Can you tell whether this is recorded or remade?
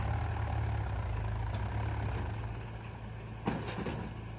recorded